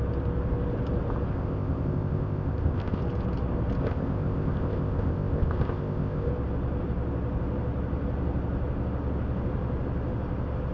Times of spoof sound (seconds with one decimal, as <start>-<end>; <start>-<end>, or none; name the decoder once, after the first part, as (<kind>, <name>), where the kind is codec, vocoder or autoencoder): 1.3-3.0 (codec, ZipCodec); 3.8-6.3